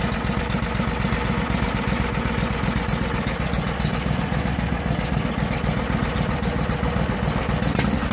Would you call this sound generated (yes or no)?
no